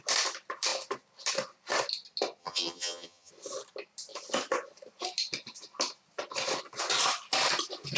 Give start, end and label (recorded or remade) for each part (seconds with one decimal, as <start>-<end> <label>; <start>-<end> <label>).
0.0-2.4 recorded; 2.4-3.3 remade; 3.3-8.0 recorded